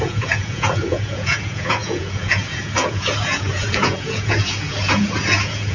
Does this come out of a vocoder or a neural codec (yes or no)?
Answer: yes